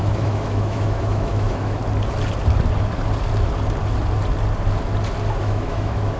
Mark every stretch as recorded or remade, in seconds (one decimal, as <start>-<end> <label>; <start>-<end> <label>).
0.0-1.8 remade; 1.8-5.4 recorded; 5.4-6.2 remade